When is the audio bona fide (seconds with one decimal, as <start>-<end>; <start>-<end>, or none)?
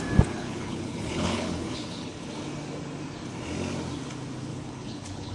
0.0-0.4; 2.3-4.5